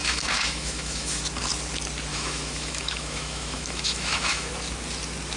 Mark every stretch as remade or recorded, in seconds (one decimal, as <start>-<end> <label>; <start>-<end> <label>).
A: 0.0-1.2 remade; 1.2-2.1 recorded; 2.1-4.5 remade; 4.5-5.4 recorded